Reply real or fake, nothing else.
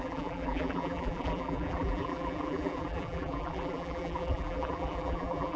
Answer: fake